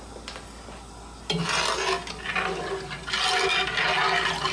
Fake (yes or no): no